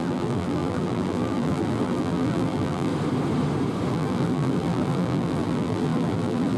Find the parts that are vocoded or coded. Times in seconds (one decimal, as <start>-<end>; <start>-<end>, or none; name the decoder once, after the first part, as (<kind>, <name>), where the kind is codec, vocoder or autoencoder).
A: 0.0-2.9 (vocoder, BigVGAN v2); 3.9-6.6